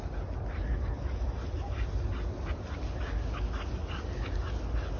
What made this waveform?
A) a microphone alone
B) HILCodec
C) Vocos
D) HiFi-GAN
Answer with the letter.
A